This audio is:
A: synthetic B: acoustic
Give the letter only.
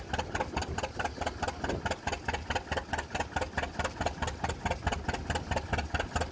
B